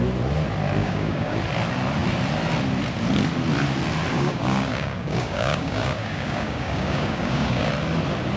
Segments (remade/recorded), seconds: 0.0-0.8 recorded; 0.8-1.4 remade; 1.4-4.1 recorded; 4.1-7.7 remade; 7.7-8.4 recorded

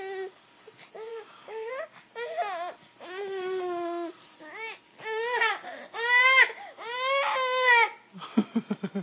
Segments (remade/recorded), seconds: 0.0-1.1 recorded; 1.1-1.7 remade; 1.7-9.0 recorded

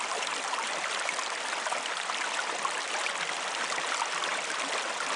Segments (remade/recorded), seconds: 0.0-5.2 recorded

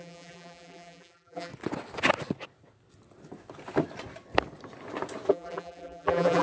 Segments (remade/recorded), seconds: 0.0-1.5 remade; 1.5-5.3 recorded; 5.3-6.4 remade

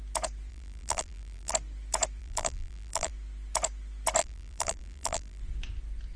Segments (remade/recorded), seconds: 0.0-0.5 recorded; 0.5-1.5 remade; 1.5-2.2 recorded; 2.2-3.1 remade; 3.1-4.2 recorded; 4.2-5.4 remade; 5.4-6.2 recorded

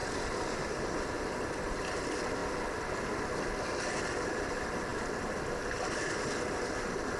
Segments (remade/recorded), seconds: 0.0-1.0 remade; 1.0-7.2 recorded

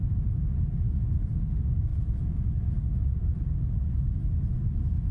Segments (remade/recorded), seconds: 0.0-5.1 recorded